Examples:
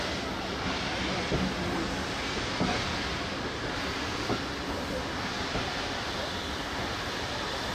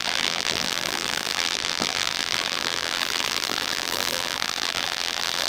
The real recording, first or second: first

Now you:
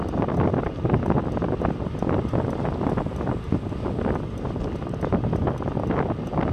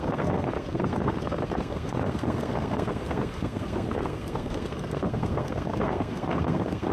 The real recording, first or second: first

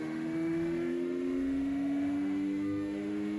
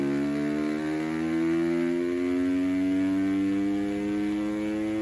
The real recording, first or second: second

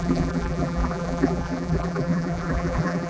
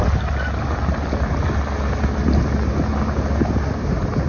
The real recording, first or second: second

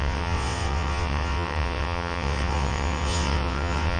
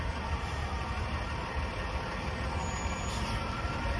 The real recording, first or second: second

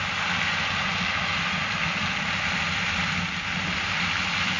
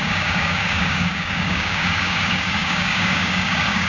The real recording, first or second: first